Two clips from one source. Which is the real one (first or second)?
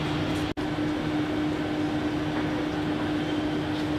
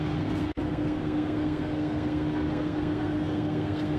first